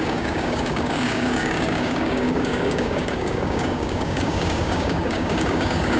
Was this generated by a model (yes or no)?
yes